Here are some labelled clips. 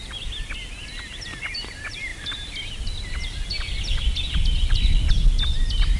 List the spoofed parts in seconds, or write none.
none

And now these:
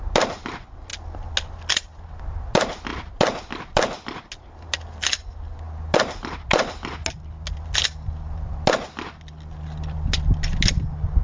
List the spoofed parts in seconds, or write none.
none

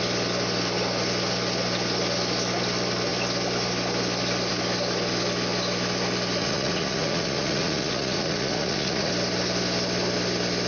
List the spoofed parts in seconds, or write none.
6.4-9.1 (vocoder, Vocos)

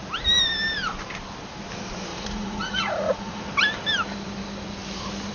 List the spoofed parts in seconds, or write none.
2.1-3.4 (vocoder, Vocos)

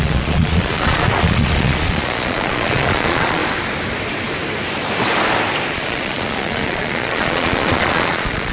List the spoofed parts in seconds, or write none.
0.0-3.4 (vocoder, Vocos); 5.7-8.5

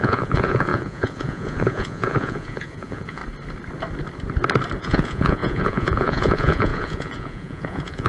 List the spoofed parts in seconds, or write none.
0.0-3.2 (vocoder, Vocos); 4.8-8.1

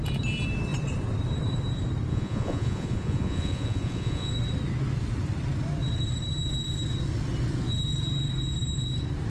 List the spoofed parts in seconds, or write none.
2.1-4.3 (vocoder, Vocos)